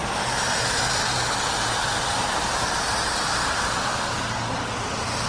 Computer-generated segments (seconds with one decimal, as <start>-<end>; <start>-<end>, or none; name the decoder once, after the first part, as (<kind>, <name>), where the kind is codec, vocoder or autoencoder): none